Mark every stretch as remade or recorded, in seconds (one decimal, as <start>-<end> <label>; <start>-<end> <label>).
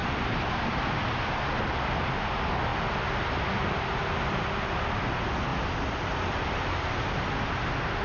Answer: 0.0-0.5 remade; 0.5-8.0 recorded